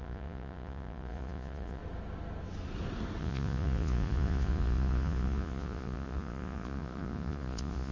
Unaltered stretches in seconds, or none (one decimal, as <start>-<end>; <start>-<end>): 1.8-3.2